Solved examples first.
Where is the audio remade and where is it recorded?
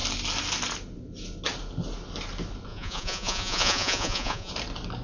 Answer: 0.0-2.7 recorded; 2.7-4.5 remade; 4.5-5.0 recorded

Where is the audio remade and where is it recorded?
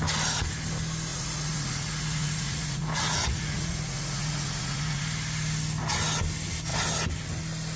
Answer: 0.0-1.1 recorded; 1.1-5.0 remade; 5.0-7.8 recorded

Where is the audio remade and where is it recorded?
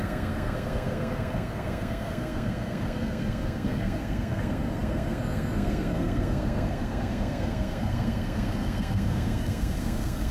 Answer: 0.0-10.3 remade